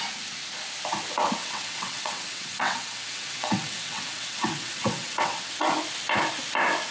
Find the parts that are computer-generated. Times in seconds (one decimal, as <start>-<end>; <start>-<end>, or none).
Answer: 1.4-5.5